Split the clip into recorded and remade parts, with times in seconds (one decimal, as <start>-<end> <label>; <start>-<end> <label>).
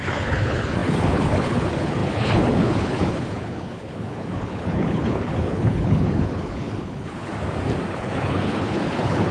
0.0-7.3 remade; 7.3-7.9 recorded; 7.9-9.3 remade